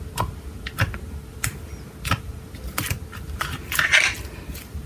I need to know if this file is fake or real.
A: real